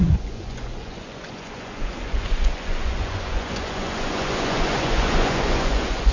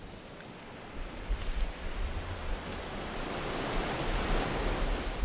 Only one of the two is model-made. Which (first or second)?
first